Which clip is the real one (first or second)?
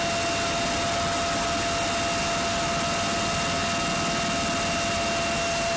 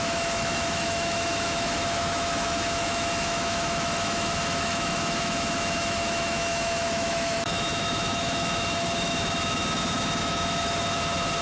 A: first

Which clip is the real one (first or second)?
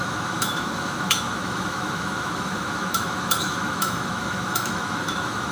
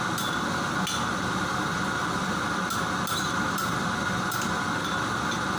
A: second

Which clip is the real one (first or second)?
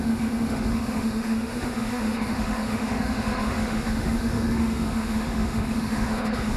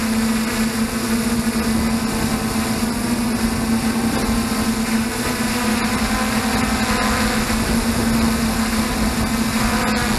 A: second